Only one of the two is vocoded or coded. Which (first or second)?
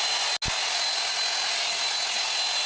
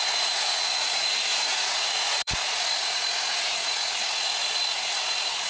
second